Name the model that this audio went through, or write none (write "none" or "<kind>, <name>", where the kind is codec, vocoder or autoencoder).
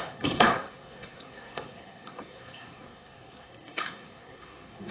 codec, SNAC